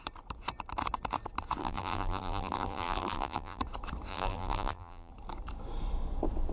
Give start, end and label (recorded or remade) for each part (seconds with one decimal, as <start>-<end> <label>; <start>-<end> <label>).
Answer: 0.0-1.6 recorded; 1.6-3.6 remade; 3.6-4.1 recorded; 4.1-5.1 remade; 5.1-6.5 recorded